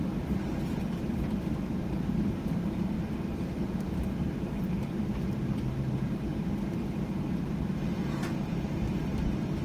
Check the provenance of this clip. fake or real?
fake